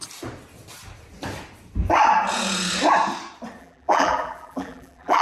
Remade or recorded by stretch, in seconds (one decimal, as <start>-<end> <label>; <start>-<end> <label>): 0.0-3.6 recorded; 3.6-5.2 remade